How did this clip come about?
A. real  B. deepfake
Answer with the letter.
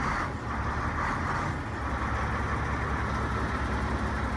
A